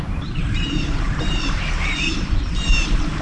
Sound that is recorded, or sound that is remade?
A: remade